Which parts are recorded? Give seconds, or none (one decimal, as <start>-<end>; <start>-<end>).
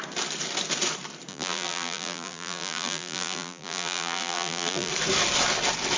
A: 0.0-1.3; 4.9-6.0